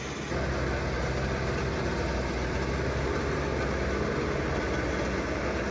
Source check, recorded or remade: recorded